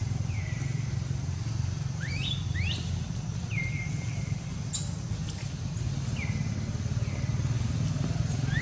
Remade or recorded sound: recorded